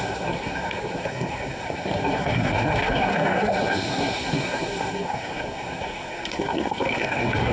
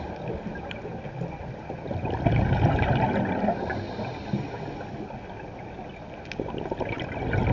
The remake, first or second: first